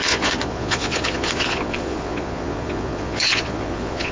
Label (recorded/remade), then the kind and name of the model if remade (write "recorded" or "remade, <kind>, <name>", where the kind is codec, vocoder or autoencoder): remade, vocoder, Vocos